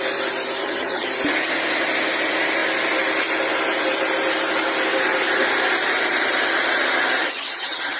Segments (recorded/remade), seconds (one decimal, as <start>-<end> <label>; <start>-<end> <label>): 0.0-0.6 recorded; 0.6-1.1 remade; 1.1-7.2 recorded; 7.2-8.0 remade